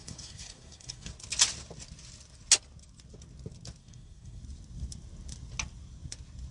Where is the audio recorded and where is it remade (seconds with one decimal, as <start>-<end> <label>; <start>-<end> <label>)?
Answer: 0.0-1.1 remade; 1.1-3.8 recorded; 3.8-4.4 remade; 4.4-6.5 recorded